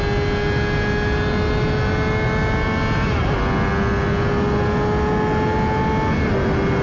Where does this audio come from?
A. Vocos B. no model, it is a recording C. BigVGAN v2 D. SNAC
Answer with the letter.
B